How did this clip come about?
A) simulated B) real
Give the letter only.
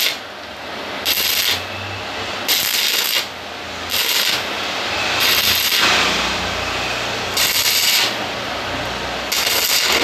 B